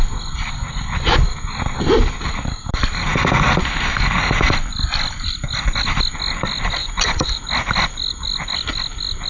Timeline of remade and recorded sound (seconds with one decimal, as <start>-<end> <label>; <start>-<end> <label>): 0.0-6.8 recorded; 6.8-7.4 remade; 7.4-9.3 recorded